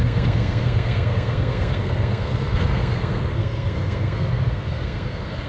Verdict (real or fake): fake